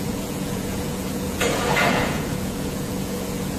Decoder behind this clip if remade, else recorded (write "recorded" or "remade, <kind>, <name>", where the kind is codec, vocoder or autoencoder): remade, vocoder, Vocos